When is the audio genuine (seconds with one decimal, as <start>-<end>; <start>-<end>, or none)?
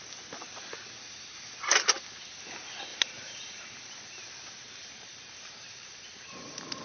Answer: 0.0-2.9; 3.6-4.8